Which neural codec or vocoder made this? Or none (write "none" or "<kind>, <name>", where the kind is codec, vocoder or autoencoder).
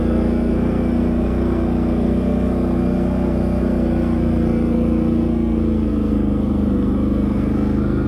codec, SNAC